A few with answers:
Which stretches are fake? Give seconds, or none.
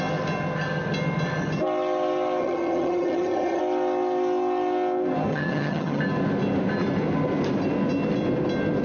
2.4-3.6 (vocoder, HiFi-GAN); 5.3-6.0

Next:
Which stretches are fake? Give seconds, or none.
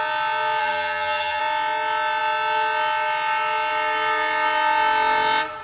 0.6-1.4 (vocoder, HiFi-GAN)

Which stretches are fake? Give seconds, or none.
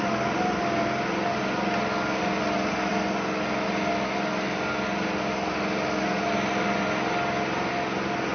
none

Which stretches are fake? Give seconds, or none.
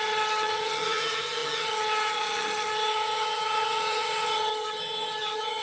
0.0-5.6 (vocoder, HiFi-GAN)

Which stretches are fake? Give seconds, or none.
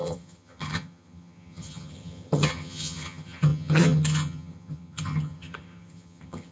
0.0-6.5 (vocoder, HiFi-GAN)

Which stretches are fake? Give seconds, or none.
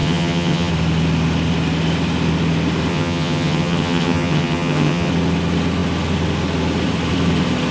0.0-0.7 (vocoder, HiFi-GAN); 2.9-5.1